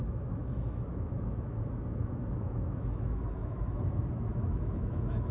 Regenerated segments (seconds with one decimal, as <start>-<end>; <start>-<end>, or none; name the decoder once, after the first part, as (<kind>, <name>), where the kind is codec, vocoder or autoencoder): 0.0-5.3 (autoencoder, DAC-VAE)